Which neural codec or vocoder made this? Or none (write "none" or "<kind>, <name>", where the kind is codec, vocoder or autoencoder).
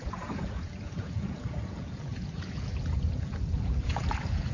vocoder, Vocos